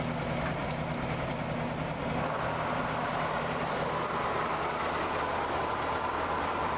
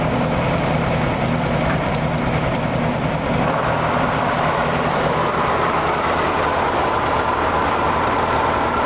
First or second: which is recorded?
first